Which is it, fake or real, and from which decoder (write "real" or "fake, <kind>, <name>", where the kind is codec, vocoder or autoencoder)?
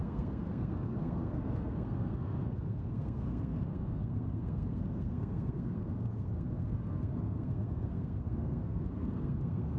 fake, codec, SNAC